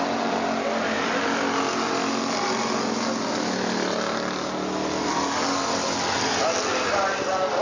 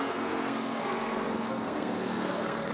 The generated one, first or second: second